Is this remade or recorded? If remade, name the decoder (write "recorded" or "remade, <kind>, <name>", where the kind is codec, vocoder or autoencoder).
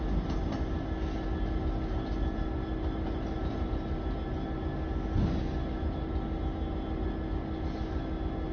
recorded